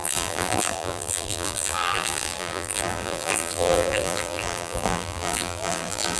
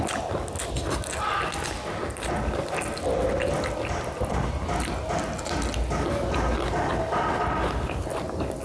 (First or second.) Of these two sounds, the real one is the second